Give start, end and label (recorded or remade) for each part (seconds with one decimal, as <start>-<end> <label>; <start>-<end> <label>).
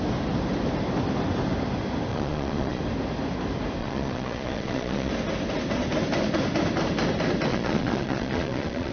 0.0-2.1 recorded; 2.1-2.8 remade; 2.8-3.8 recorded; 3.8-5.1 remade; 5.1-7.5 recorded; 7.5-8.9 remade